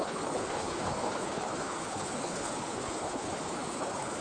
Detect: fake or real fake